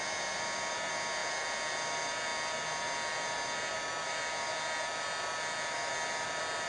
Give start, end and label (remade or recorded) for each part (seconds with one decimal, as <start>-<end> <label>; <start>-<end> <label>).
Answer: 0.0-6.7 recorded